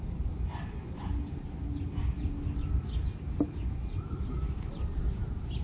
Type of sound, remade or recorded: recorded